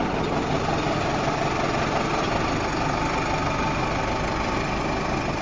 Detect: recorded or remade recorded